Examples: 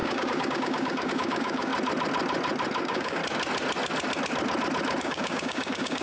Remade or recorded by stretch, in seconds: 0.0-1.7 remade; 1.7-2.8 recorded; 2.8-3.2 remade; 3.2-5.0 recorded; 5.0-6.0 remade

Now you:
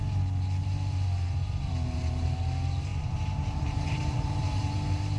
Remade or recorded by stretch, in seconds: 0.0-2.9 recorded; 2.9-4.7 remade; 4.7-5.2 recorded

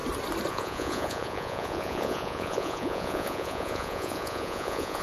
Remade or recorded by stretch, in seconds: 0.0-0.5 recorded; 0.5-5.0 remade

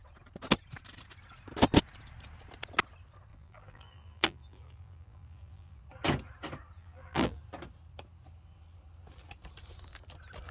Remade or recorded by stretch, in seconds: 0.0-3.3 recorded; 3.3-5.8 remade; 5.8-6.8 recorded; 6.8-7.4 remade; 7.4-10.5 recorded

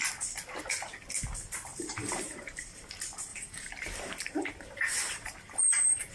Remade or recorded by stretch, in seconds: 0.0-1.7 recorded; 1.7-2.9 remade; 2.9-3.3 recorded; 3.3-6.1 remade

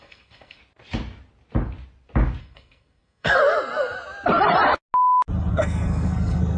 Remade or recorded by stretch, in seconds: 0.0-0.6 remade; 0.6-2.4 recorded; 2.4-3.4 remade; 3.4-5.5 recorded; 5.5-6.6 remade

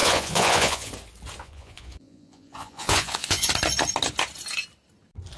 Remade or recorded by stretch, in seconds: 0.0-0.9 remade; 0.9-1.4 recorded; 1.4-3.5 remade; 3.5-5.4 recorded

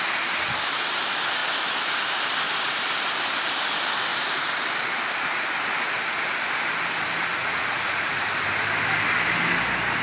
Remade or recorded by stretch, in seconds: 0.0-7.4 recorded; 7.4-8.3 remade; 8.3-10.0 recorded